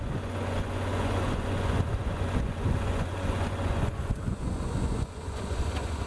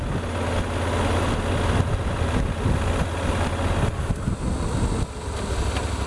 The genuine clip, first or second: second